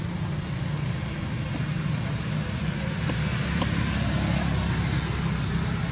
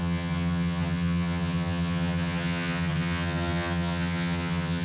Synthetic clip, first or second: second